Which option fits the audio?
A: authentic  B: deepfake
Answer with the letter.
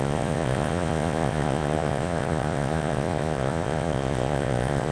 B